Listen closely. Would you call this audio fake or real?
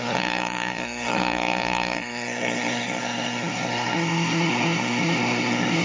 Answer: fake